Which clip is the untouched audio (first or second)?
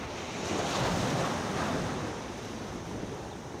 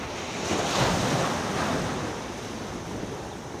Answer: second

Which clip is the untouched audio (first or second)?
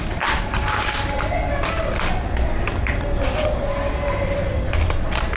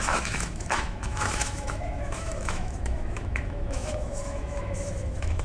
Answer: first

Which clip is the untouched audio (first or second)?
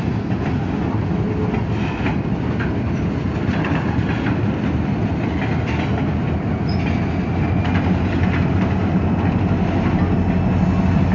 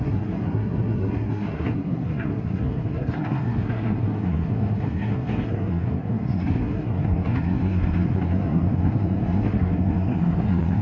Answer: first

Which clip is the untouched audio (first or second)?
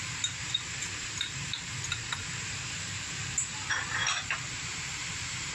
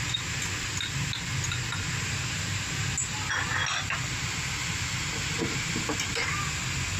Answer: second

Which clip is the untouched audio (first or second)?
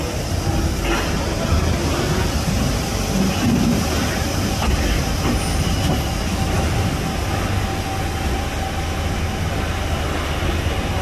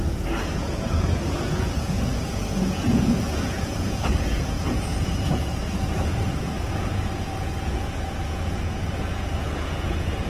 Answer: first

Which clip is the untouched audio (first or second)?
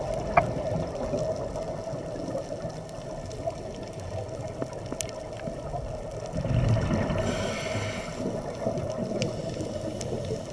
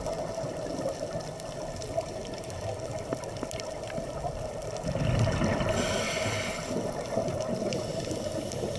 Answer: first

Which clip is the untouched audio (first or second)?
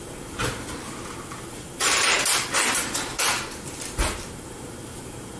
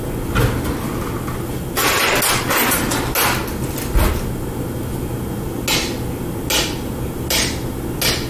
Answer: second